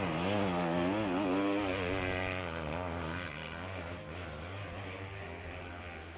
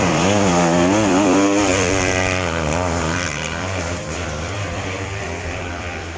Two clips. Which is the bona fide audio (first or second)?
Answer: first